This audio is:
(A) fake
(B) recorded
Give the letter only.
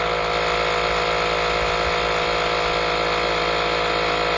B